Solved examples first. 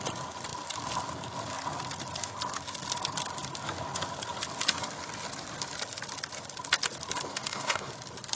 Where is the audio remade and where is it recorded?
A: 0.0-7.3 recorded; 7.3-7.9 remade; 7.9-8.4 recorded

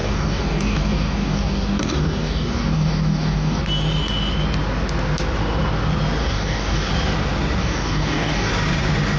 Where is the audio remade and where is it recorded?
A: 0.0-3.6 remade; 3.6-6.2 recorded; 6.2-6.9 remade; 6.9-7.6 recorded; 7.6-8.5 remade; 8.5-9.2 recorded